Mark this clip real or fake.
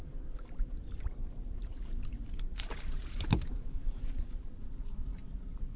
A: fake